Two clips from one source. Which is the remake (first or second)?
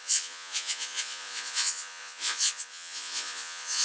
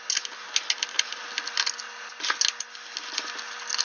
first